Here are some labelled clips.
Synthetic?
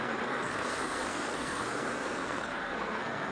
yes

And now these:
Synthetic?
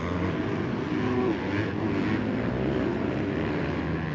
no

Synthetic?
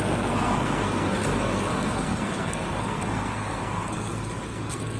yes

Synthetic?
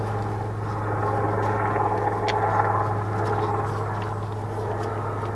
no